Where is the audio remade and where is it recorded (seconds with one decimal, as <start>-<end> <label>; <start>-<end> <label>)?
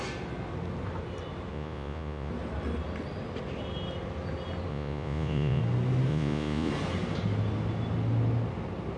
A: 0.0-1.5 recorded; 1.5-2.3 remade; 2.3-4.7 recorded; 4.7-5.6 remade; 5.6-6.1 recorded; 6.1-6.7 remade; 6.7-9.0 recorded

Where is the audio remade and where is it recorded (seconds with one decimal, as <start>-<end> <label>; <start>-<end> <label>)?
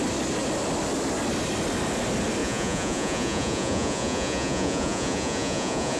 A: 0.0-2.4 recorded; 2.4-6.0 remade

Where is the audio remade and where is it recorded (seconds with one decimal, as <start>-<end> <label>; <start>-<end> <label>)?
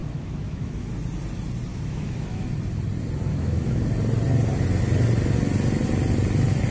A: 0.0-0.9 remade; 0.9-1.7 recorded; 1.7-2.5 remade; 2.5-3.3 recorded; 3.3-3.8 remade; 3.8-6.7 recorded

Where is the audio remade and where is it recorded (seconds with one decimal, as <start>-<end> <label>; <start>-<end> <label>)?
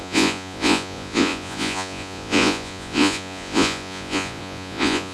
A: 0.0-5.1 remade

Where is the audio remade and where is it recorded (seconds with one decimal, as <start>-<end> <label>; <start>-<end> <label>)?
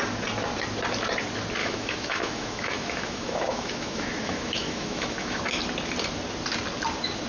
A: 0.0-1.6 recorded; 1.6-5.4 remade; 5.4-7.3 recorded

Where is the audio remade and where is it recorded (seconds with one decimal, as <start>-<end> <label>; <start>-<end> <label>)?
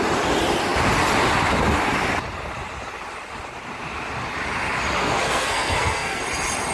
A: 0.0-5.0 recorded; 5.0-6.2 remade; 6.2-6.7 recorded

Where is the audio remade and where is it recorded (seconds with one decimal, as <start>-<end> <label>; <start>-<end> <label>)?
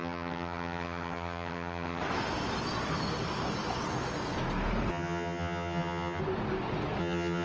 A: 0.0-2.0 remade; 2.0-4.9 recorded; 4.9-6.2 remade; 6.2-7.0 recorded; 7.0-7.4 remade